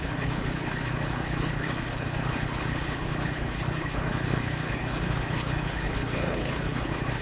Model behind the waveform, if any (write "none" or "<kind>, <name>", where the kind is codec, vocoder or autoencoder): codec, HILCodec